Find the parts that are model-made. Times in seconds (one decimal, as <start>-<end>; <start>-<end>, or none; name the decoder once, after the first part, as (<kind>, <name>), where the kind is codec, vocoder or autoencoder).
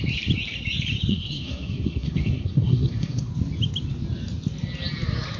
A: 1.1-3.3 (codec, SNAC)